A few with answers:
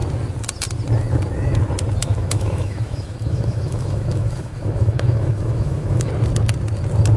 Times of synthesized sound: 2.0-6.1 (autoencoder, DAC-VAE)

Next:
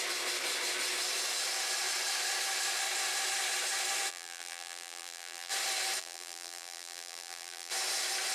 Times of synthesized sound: 4.1-5.5 (vocoder, BigVGAN v2); 6.0-7.7